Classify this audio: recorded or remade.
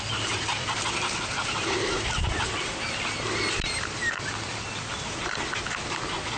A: recorded